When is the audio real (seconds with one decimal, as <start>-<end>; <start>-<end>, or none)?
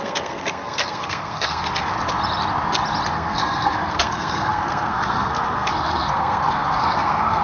1.9-3.1